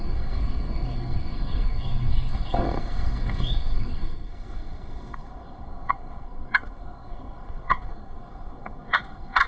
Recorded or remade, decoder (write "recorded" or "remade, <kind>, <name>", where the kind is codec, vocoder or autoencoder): remade, codec, SNAC